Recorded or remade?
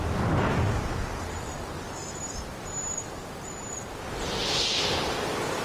recorded